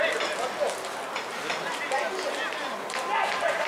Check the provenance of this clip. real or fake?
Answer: real